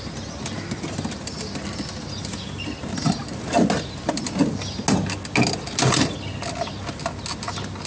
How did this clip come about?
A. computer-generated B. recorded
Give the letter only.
B